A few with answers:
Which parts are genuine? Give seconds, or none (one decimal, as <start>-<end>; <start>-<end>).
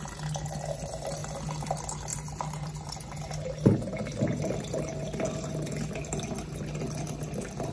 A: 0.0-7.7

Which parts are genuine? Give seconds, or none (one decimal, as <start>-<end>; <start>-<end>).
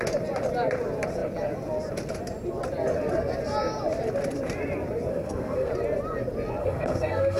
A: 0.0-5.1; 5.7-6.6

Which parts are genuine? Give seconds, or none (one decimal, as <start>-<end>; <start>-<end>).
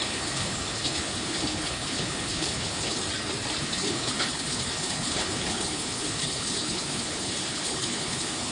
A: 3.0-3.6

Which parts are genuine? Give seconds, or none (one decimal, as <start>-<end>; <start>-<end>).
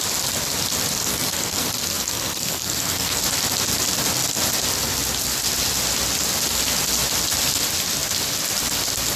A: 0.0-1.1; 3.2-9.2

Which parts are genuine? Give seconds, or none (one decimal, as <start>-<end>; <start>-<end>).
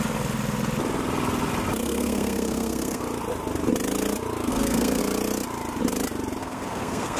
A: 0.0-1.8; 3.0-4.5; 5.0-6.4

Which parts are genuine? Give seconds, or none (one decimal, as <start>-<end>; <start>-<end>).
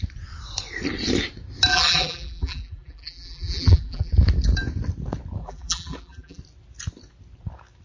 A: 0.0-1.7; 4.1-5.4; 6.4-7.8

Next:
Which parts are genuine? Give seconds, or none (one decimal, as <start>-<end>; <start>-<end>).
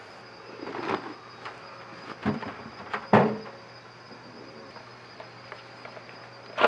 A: 0.0-2.2; 6.2-6.7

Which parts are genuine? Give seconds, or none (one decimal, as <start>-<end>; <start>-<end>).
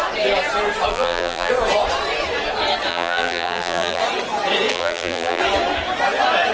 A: 0.0-0.9; 1.5-2.9; 4.0-4.7; 5.4-6.5